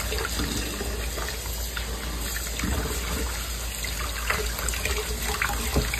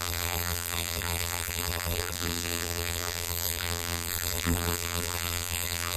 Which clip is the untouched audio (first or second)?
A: first